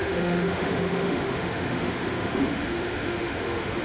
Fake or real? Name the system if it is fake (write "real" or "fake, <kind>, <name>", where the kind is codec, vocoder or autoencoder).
fake, autoencoder, DAC-VAE